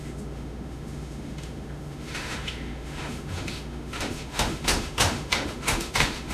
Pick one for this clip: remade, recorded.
remade